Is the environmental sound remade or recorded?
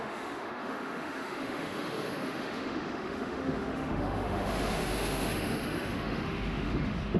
remade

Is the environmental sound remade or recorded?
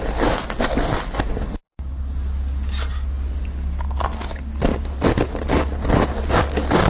recorded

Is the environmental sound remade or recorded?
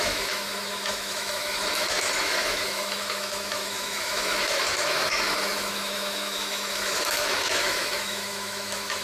remade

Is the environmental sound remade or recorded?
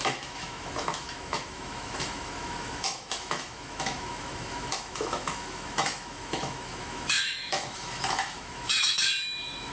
remade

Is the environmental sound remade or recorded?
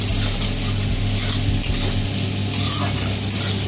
recorded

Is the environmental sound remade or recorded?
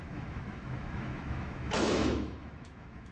remade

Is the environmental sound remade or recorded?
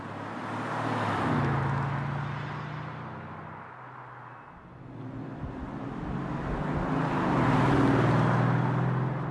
recorded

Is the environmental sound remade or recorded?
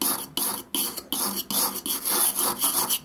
recorded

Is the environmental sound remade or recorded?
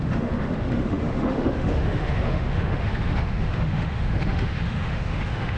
remade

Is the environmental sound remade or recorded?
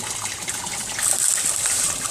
recorded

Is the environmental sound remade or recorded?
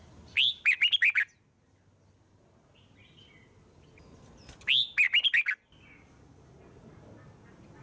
recorded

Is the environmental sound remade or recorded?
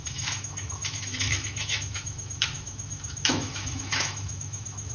remade